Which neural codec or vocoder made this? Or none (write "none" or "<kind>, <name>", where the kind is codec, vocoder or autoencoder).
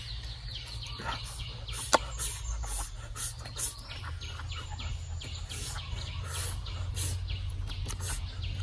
none